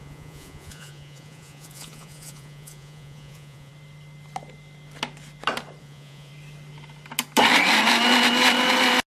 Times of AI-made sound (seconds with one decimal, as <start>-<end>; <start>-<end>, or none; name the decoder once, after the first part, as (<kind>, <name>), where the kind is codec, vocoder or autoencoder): 0.0-3.7 (vocoder, Vocos); 5.8-6.3